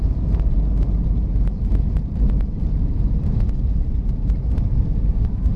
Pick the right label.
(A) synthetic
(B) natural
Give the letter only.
B